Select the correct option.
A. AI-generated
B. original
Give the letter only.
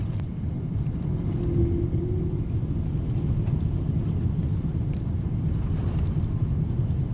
B